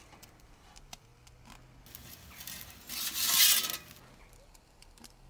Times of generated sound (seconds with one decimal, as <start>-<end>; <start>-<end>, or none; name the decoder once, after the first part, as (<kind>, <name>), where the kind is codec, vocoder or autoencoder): 0.0-1.1 (vocoder, BigVGAN v2); 4.3-5.3